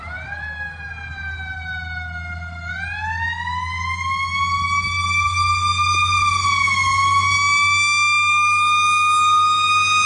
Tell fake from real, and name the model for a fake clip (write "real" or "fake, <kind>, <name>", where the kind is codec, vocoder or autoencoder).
real